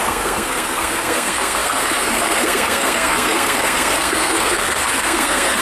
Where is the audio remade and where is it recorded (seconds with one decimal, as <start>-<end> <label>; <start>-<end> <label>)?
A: 0.0-5.6 remade